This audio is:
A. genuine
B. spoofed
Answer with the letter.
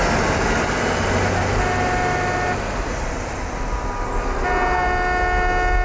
A